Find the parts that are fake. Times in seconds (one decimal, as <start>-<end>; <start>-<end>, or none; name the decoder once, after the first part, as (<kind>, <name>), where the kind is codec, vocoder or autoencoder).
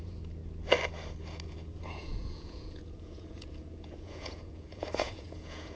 0.0-0.4 (vocoder, Vocos); 1.4-5.8